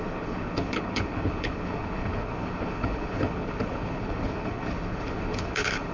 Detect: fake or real fake